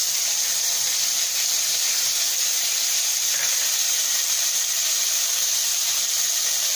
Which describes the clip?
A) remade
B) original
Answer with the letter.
A